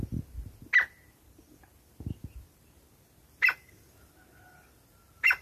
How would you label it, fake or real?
real